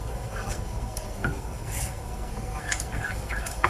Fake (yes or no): yes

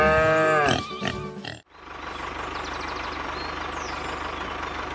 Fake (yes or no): no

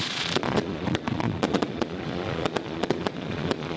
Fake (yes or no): yes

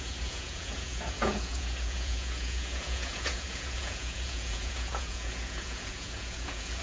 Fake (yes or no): yes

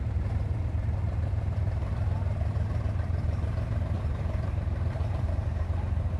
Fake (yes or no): yes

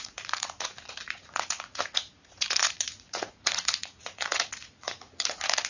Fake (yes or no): yes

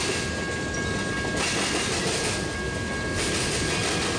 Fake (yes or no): no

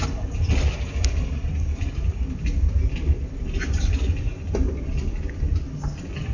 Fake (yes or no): no